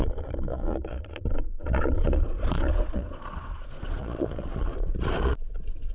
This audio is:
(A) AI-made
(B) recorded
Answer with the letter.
A